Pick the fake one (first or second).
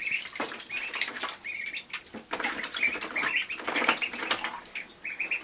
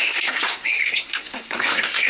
second